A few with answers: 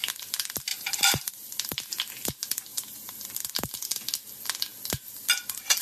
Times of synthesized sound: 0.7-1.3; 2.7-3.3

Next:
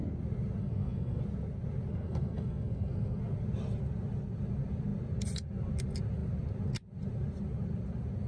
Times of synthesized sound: 0.6-1.2; 1.9-3.2

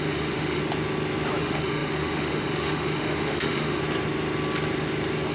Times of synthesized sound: 0.0-0.6; 1.4-3.8

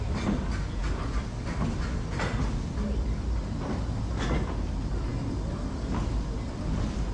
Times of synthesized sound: none

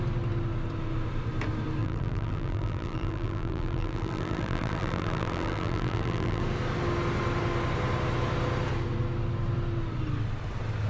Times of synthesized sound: 1.8-6.4